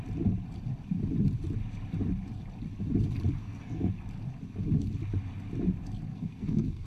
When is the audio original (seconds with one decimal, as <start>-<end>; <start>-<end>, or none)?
0.0-3.4; 3.9-6.1